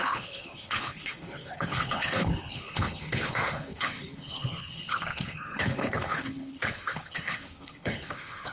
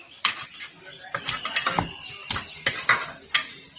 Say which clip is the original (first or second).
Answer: second